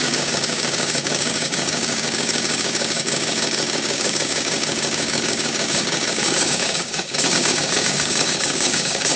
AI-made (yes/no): yes